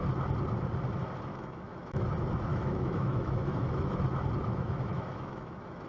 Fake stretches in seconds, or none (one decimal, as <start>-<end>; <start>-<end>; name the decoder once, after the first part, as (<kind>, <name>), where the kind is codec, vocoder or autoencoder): 1.3-2.1 (autoencoder, DAC-VAE); 2.5-4.0; 4.4-5.9

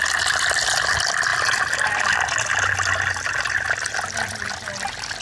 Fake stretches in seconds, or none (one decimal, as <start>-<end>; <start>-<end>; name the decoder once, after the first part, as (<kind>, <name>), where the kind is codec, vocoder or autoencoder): none

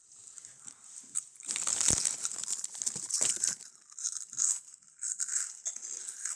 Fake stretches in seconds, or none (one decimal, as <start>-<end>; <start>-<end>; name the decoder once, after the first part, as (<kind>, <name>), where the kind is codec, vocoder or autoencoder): none